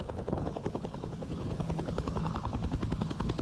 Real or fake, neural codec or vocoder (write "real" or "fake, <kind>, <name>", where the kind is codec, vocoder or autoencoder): fake, codec, HILCodec